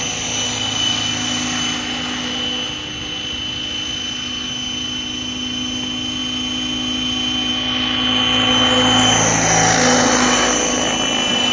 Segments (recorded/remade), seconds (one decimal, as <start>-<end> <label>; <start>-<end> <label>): 0.0-11.5 recorded

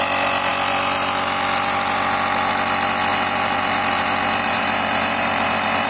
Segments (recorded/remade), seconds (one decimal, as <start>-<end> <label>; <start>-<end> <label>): 0.0-3.1 recorded; 3.1-5.9 remade

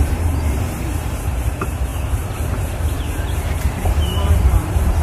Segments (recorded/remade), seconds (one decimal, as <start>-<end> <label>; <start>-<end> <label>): 0.0-5.0 remade

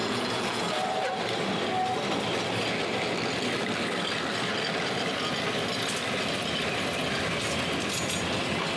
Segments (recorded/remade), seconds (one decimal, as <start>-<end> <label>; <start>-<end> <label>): 0.0-0.6 remade; 0.6-8.8 recorded

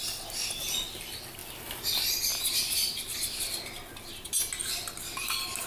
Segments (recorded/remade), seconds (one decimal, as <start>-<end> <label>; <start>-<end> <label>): 0.0-5.7 recorded

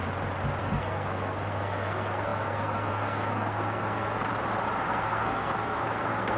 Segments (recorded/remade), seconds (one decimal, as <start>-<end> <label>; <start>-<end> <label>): 0.0-0.6 recorded; 0.6-4.3 remade; 4.3-4.9 recorded; 4.9-6.4 remade